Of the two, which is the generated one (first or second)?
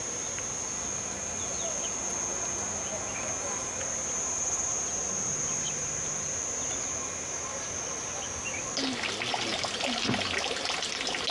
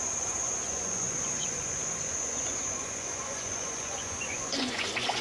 second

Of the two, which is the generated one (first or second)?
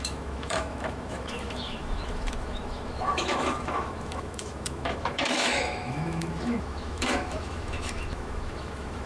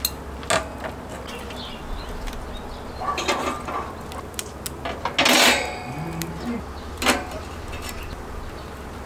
first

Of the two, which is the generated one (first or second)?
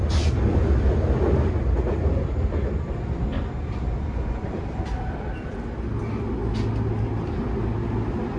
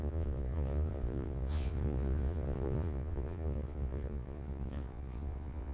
second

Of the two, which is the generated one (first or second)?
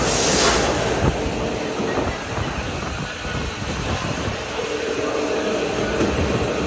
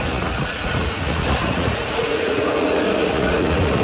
second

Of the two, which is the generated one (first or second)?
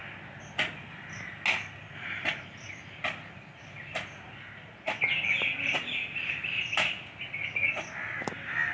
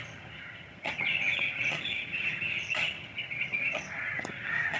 second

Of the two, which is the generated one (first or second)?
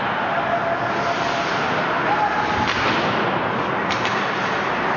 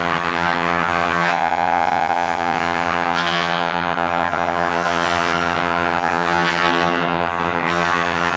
second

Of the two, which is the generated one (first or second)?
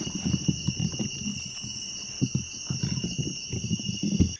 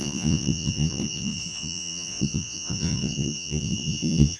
second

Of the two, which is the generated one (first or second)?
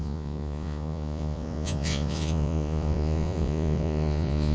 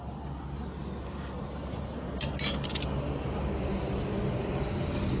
first